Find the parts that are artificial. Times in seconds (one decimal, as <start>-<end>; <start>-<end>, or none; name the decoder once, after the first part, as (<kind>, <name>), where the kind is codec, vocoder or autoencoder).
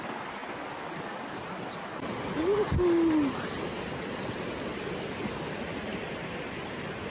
none